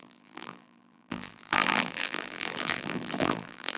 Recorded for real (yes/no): no